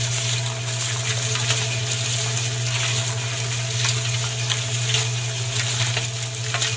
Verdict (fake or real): real